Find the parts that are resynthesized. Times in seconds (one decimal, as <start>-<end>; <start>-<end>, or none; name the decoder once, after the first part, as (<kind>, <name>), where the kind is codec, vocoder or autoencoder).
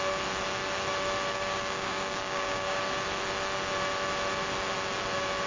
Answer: 1.3-2.8 (codec, DAC)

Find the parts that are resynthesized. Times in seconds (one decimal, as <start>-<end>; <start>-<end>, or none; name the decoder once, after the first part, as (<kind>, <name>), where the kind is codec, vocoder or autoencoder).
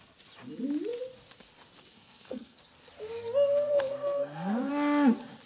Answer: 1.9-2.6 (codec, SNAC); 3.7-4.7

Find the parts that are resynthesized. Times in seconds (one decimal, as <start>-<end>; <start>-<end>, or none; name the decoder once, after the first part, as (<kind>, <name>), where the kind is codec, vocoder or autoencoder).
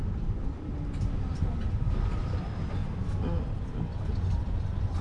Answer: none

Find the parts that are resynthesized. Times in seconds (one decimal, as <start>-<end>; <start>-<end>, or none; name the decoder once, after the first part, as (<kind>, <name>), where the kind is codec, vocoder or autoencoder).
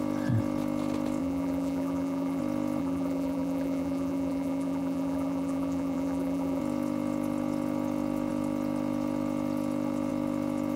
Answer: 1.2-2.4 (vocoder, BigVGAN v2); 2.8-6.6